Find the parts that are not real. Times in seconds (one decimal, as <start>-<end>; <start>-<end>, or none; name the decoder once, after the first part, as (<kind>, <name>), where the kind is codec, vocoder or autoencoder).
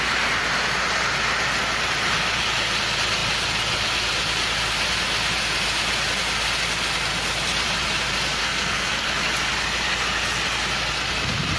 8.4-8.9 (codec, SNAC)